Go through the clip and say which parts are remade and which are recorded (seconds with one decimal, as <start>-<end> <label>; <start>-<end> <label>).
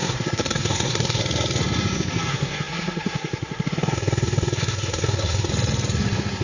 0.0-1.2 remade; 1.2-2.3 recorded; 2.3-5.5 remade; 5.5-6.4 recorded